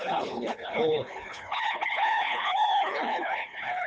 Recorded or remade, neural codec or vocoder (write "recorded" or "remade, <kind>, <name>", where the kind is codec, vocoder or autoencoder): remade, codec, HILCodec